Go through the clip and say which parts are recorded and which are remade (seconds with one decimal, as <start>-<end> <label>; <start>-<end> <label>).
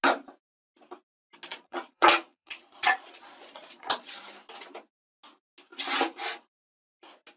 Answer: 0.0-1.5 recorded; 1.5-4.2 remade; 4.2-7.4 recorded